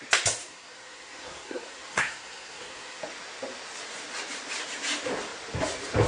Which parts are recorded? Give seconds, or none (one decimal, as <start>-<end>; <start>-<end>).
0.0-0.4; 3.0-6.1